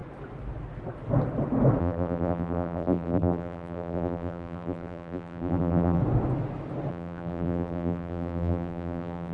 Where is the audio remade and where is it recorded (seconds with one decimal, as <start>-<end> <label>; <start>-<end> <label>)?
0.0-1.8 recorded; 1.8-6.0 remade; 6.0-6.9 recorded; 6.9-9.3 remade